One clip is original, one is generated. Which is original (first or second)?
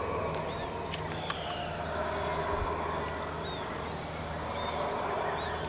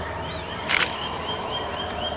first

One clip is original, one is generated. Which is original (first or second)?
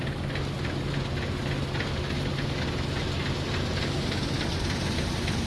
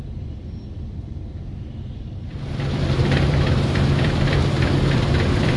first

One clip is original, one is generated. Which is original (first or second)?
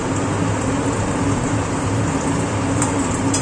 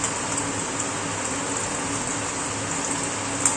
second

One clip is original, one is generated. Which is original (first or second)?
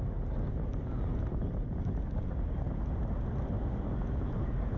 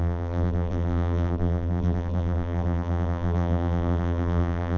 first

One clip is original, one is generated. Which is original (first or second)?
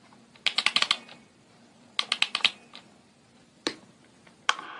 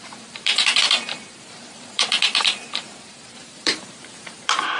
first